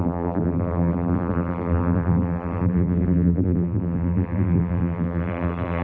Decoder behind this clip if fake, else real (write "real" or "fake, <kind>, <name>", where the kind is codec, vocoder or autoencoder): fake, vocoder, BigVGAN v2